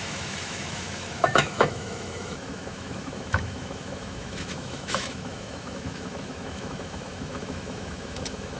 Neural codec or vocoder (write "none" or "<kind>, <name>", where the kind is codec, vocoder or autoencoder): autoencoder, DAC-VAE